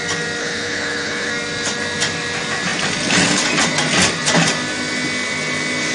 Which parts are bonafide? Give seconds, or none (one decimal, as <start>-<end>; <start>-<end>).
0.0-0.4; 1.3-5.9